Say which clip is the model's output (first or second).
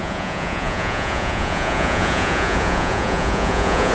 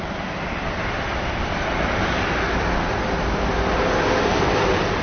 first